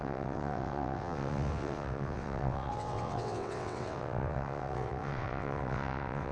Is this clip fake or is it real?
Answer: fake